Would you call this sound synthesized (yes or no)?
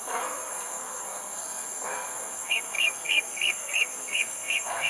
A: yes